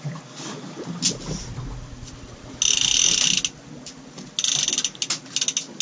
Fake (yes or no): no